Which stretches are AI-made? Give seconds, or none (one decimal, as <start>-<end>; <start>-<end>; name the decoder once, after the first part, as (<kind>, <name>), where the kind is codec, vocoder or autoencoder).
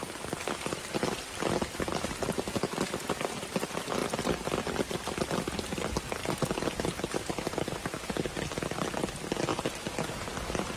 1.9-2.4 (vocoder, BigVGAN v2); 6.2-8.3; 9.5-10.3